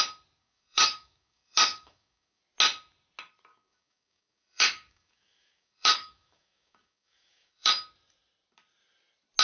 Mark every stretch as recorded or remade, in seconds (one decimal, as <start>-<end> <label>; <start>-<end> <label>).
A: 0.0-0.4 recorded; 0.4-2.4 remade; 2.4-3.5 recorded; 3.5-7.7 remade; 7.7-9.4 recorded